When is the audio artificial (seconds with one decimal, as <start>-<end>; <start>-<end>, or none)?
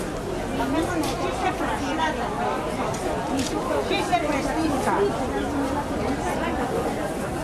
none